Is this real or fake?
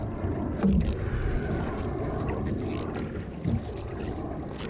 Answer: real